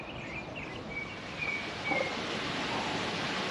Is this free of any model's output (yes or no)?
yes